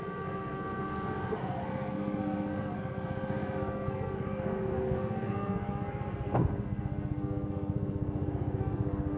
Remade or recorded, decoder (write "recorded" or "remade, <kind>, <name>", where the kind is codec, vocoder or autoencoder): remade, codec, SNAC